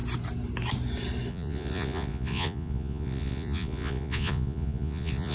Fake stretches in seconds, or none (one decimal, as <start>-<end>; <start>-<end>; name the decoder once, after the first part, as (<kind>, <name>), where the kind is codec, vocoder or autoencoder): 1.3-5.3 (vocoder, Vocos)

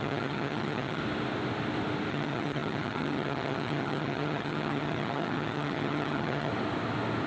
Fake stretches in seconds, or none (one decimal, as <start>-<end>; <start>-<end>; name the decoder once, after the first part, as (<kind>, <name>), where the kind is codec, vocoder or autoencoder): 0.0-1.0 (vocoder, HiFi-GAN); 2.1-6.5

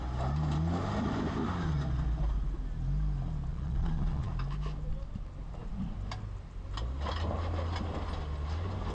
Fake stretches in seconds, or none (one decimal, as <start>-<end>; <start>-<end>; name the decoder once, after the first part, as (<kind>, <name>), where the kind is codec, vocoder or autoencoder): 3.5-4.3 (vocoder, Vocos)

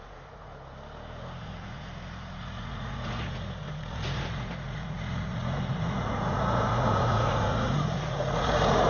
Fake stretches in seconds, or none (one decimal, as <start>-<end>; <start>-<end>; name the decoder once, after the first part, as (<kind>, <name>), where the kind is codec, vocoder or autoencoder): 0.0-0.5 (vocoder, Vocos); 1.4-8.9

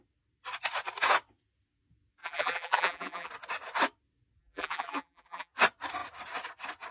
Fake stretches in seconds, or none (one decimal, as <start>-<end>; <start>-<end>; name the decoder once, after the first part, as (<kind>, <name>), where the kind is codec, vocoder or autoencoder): 2.2-3.3 (vocoder, BigVGAN v2); 4.4-5.5

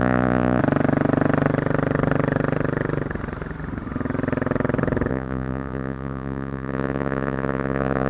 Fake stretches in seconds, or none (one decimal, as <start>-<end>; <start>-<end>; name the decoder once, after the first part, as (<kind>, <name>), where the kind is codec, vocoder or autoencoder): 0.0-0.6 (vocoder, Vocos); 5.1-8.1

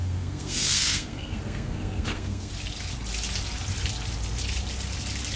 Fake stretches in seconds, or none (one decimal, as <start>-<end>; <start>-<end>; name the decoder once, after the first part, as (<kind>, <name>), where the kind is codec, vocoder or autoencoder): 0.0-2.5 (codec, SNAC)